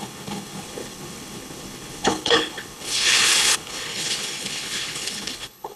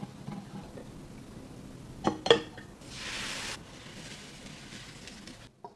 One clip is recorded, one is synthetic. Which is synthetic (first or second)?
first